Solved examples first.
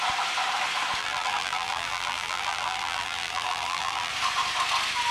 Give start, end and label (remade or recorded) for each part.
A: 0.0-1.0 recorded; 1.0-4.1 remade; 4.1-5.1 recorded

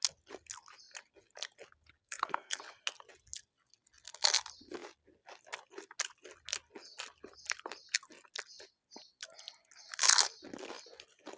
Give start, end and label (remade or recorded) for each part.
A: 0.0-2.0 recorded; 2.0-2.6 remade; 2.6-11.4 recorded

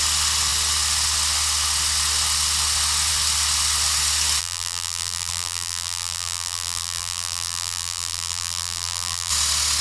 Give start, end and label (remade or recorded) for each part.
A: 0.0-4.4 recorded; 4.4-9.3 remade; 9.3-9.8 recorded

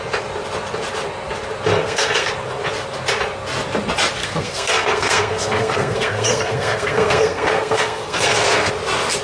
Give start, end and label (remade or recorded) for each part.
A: 0.0-1.8 recorded; 1.8-2.3 remade; 2.3-4.2 recorded; 4.2-8.7 remade; 8.7-9.2 recorded

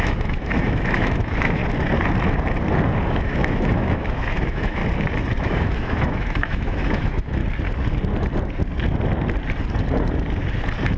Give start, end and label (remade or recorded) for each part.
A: 0.0-1.6 remade; 1.6-3.1 recorded; 3.1-4.8 remade; 4.8-5.4 recorded; 5.4-7.4 remade; 7.4-11.0 recorded